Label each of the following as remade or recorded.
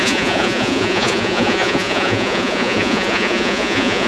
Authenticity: remade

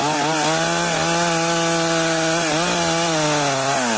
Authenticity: recorded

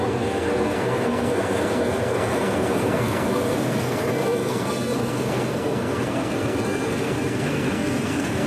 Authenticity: remade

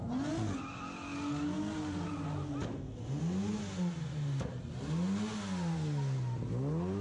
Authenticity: recorded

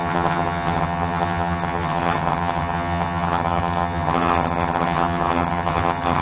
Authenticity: remade